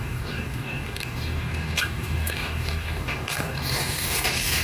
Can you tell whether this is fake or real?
fake